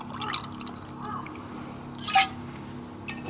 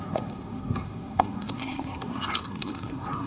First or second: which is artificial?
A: second